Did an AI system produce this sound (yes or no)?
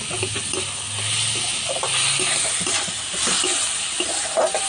no